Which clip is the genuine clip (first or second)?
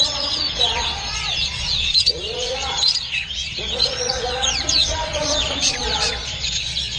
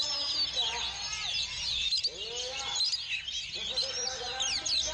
second